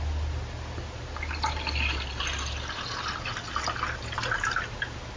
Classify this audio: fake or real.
real